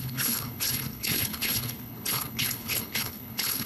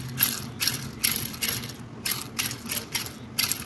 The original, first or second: second